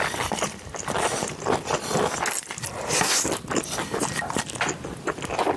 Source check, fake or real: real